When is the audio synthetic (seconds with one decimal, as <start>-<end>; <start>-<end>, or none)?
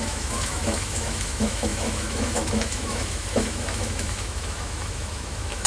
0.0-5.7